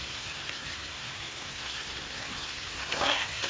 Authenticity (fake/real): fake